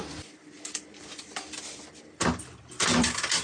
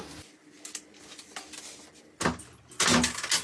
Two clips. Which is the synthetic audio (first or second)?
first